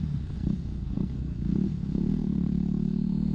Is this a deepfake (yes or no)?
yes